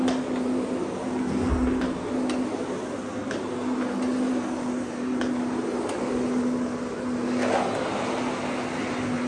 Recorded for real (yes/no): yes